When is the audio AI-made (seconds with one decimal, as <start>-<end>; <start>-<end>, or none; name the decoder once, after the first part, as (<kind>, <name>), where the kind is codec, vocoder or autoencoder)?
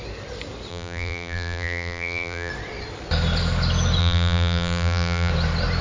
0.7-2.5 (vocoder, BigVGAN v2); 4.0-5.3